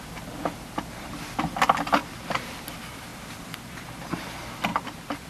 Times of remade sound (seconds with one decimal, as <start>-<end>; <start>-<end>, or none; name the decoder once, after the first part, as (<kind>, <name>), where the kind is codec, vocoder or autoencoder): 0.0-5.3 (vocoder, BigVGAN v2)